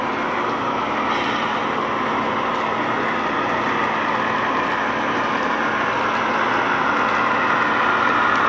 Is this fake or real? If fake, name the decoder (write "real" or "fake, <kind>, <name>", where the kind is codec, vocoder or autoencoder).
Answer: real